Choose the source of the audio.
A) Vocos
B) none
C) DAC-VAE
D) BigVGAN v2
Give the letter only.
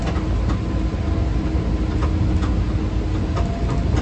B